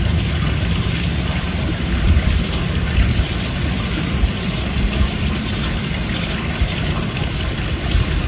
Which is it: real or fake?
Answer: real